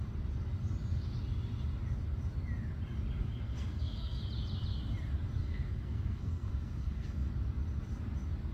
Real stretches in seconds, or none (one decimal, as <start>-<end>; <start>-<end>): 0.0-3.2; 4.2-5.4; 7.3-8.5